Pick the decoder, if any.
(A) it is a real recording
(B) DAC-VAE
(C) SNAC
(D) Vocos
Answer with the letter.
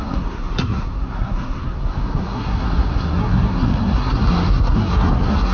C